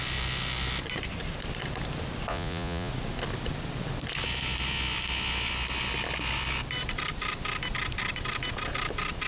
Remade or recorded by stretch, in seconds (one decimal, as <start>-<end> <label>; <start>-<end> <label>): 0.0-2.3 recorded; 2.3-2.9 remade; 2.9-9.3 recorded